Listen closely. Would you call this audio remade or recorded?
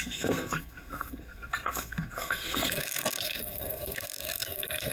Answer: remade